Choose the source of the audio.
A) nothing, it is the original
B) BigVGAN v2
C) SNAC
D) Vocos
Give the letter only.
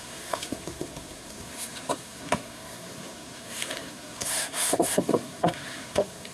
C